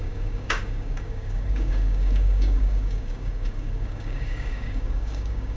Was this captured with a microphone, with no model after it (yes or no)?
no